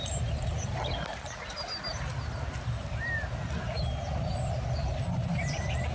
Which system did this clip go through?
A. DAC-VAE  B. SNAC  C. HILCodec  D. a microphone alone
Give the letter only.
D